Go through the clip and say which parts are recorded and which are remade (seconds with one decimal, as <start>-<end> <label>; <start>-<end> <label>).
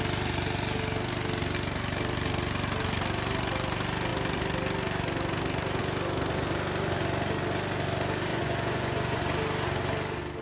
0.0-8.3 recorded; 8.3-9.2 remade; 9.2-10.4 recorded